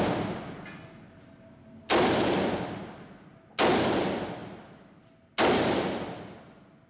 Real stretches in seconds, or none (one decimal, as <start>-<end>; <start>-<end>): 0.0-6.9